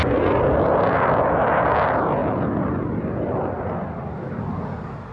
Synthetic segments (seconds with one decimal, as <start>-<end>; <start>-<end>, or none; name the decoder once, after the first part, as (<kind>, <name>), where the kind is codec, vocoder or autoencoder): none